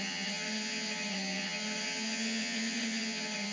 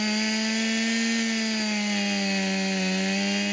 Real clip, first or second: second